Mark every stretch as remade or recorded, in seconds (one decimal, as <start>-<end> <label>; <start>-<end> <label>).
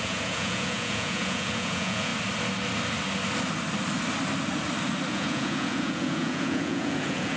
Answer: 0.0-2.1 remade; 2.1-5.1 recorded; 5.1-7.4 remade